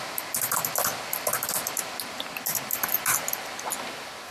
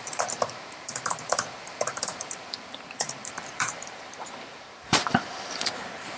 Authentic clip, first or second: first